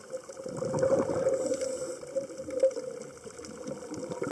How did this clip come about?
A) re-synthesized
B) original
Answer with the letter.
B